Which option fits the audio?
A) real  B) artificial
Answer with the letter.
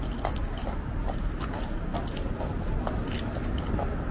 A